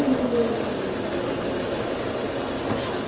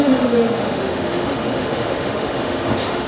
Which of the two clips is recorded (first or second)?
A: first